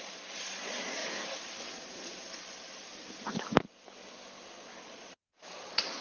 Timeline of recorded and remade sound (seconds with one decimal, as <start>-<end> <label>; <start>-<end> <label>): 0.0-1.0 remade; 1.0-1.7 recorded; 1.7-2.9 remade; 2.9-4.8 recorded; 4.8-6.0 remade